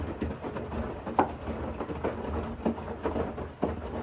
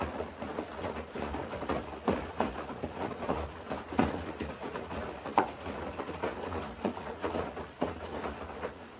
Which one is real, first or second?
first